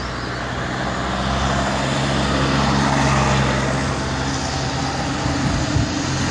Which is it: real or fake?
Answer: real